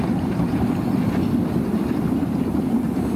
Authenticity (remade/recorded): recorded